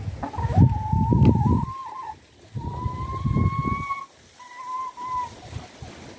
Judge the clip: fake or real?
real